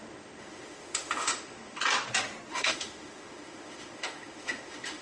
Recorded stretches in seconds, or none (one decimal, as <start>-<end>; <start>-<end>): 1.8-2.5